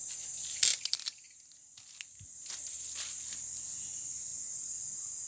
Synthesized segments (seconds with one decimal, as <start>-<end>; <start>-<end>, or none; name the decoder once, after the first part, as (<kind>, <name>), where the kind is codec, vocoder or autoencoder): none